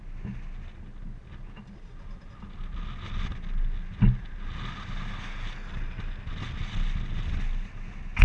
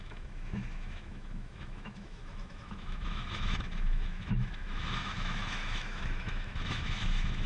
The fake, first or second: second